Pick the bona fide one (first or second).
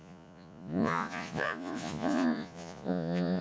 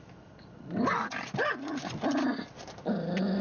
second